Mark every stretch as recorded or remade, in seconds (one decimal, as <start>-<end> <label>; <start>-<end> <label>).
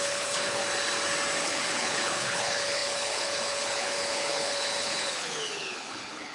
0.0-0.6 remade; 0.6-1.4 recorded; 1.4-6.3 remade